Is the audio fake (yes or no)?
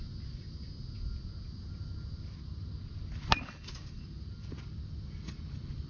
no